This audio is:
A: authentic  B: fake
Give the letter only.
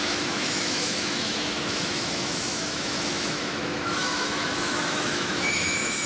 B